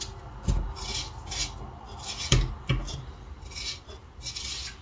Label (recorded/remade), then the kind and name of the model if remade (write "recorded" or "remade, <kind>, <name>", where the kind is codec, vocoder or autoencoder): recorded